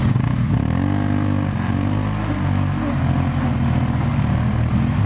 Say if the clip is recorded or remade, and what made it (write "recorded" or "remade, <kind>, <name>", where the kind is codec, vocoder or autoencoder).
recorded